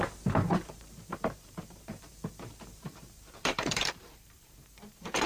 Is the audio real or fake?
fake